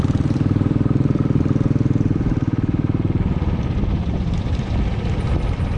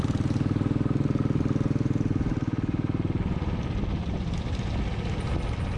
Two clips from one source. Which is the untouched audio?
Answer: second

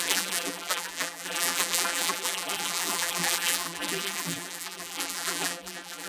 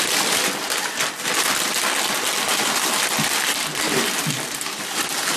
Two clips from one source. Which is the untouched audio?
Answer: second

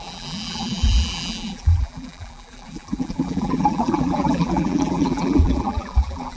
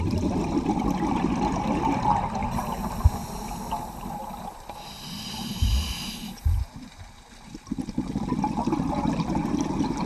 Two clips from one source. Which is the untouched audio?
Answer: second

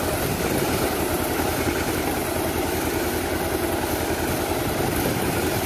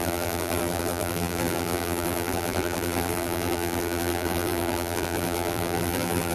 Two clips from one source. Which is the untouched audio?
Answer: first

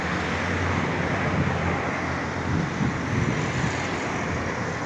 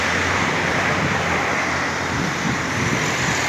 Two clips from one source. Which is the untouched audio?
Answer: first